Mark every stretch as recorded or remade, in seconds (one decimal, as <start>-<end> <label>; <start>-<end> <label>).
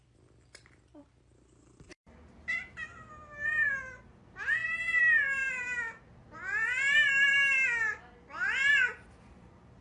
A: 0.0-1.9 remade; 1.9-3.7 recorded; 3.7-4.6 remade; 4.6-9.2 recorded; 9.2-9.8 remade